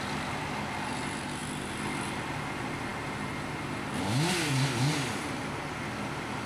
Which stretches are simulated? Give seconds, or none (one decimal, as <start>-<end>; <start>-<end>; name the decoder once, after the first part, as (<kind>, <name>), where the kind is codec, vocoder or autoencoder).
none